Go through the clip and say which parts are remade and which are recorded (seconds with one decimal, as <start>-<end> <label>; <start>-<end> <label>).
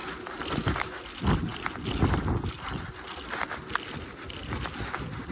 0.0-5.3 recorded